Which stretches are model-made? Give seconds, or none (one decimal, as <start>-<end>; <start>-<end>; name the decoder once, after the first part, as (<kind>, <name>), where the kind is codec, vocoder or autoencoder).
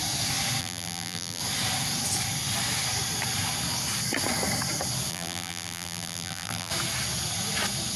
0.6-1.4 (vocoder, BigVGAN v2); 5.1-6.7